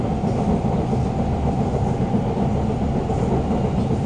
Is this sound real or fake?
real